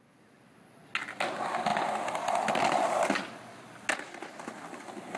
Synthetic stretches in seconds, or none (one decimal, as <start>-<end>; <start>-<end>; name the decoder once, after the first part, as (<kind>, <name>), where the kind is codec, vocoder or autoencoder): none